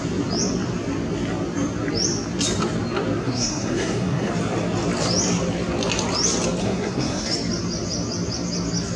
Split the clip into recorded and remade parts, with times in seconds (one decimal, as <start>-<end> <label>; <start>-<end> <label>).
0.0-3.2 recorded; 3.2-4.3 remade; 4.3-6.6 recorded; 6.6-7.3 remade; 7.3-9.0 recorded